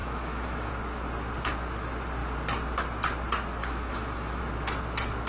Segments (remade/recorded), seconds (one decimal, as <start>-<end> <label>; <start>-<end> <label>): 0.0-0.7 remade; 0.7-3.6 recorded; 3.6-4.4 remade; 4.4-5.3 recorded